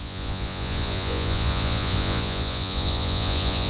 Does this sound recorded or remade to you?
remade